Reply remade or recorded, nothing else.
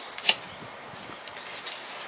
recorded